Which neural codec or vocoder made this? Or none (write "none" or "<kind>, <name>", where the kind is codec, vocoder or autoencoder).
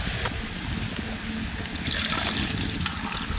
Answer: none